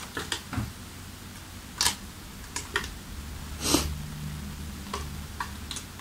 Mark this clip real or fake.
real